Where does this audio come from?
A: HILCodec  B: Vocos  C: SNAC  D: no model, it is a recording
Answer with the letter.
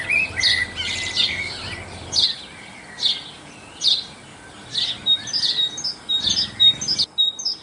D